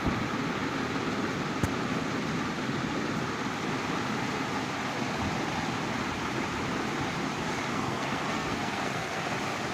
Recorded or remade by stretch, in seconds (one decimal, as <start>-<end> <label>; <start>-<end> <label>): 0.0-7.7 recorded; 7.7-9.2 remade; 9.2-9.7 recorded